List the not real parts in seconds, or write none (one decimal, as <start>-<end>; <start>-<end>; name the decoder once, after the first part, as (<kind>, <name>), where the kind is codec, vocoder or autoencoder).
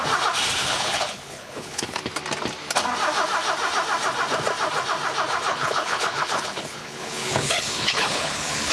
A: 0.6-2.0 (codec, HILCodec); 5.5-8.7